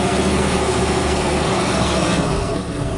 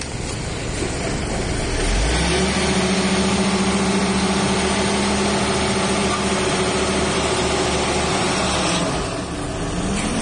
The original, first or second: second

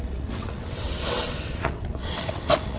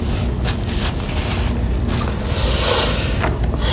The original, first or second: second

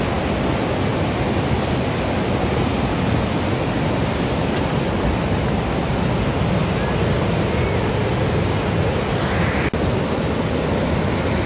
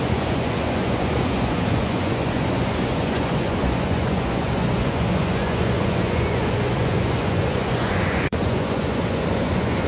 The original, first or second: first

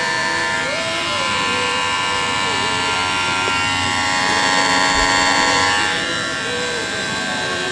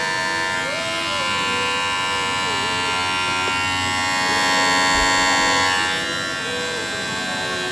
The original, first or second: second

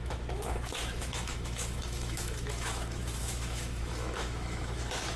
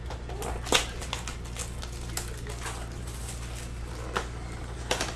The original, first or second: second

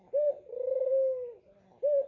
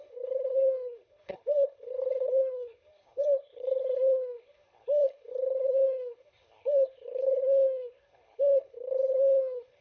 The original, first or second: first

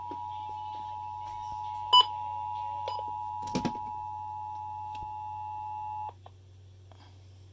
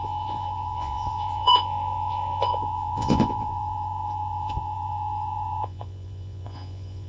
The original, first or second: first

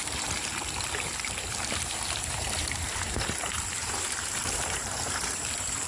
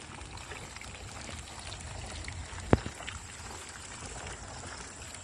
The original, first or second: second